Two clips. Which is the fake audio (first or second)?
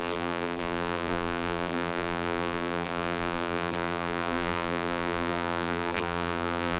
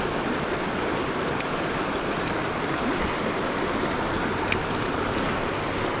first